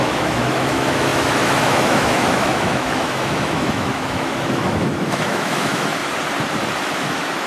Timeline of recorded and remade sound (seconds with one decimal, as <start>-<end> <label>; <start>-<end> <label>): 0.0-6.0 remade; 6.0-6.8 recorded; 6.8-7.5 remade